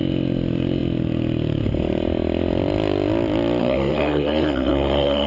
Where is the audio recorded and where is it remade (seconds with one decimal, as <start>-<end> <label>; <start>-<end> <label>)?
0.0-3.6 recorded; 3.6-5.3 remade